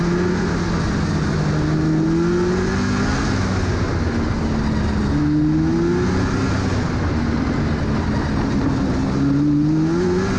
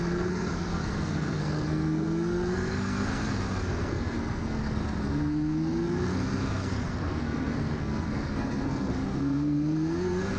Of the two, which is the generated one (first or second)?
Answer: second